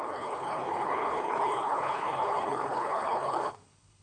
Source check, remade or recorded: remade